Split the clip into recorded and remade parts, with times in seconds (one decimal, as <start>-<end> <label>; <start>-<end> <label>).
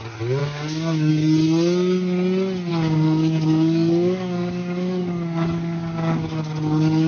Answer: 0.0-0.4 recorded; 0.4-1.1 remade; 1.1-2.7 recorded; 2.7-7.1 remade